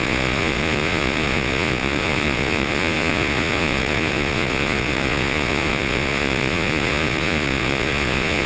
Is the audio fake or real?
fake